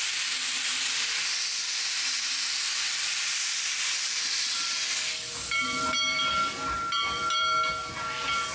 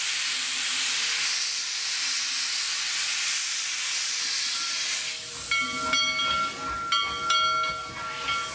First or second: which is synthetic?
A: first